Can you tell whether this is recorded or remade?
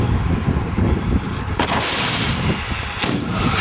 recorded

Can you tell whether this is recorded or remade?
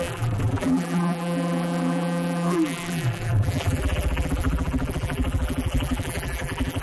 remade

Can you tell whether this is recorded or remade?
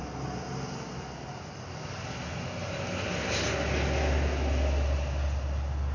recorded